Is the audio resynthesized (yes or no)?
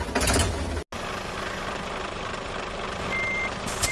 no